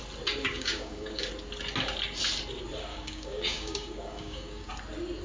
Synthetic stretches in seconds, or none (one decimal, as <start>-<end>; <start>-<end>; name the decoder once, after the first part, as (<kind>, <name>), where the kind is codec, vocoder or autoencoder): 0.4-1.3 (codec, DAC); 2.9-4.7